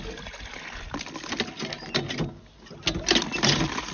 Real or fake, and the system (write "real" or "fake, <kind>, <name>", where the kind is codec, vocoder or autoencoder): real